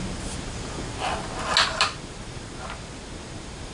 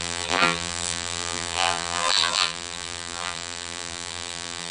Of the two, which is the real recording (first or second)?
first